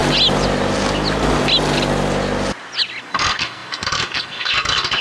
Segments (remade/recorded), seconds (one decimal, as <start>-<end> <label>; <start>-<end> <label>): 0.0-3.0 recorded; 3.0-5.0 remade